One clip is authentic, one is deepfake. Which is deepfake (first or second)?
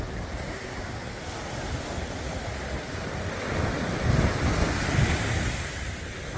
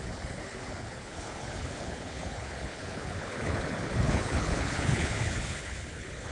second